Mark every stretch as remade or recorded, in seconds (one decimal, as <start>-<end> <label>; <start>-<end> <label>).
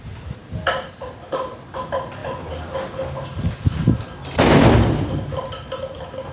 0.0-6.3 recorded